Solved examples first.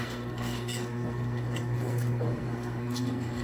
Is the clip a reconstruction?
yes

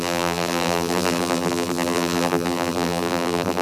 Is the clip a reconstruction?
yes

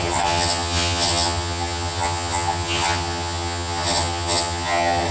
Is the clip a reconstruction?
yes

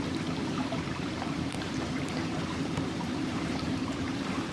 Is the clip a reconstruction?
yes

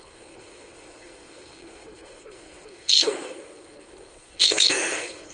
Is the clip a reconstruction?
yes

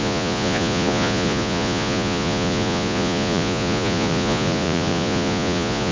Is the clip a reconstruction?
yes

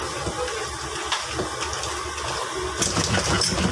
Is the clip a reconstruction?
no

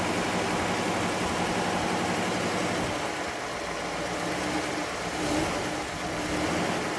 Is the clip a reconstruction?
no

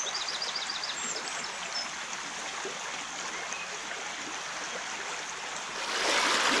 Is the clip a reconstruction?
no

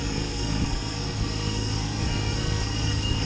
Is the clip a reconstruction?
yes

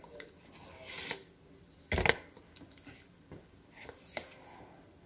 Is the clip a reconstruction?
no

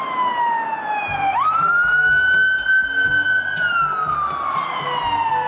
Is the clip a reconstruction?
no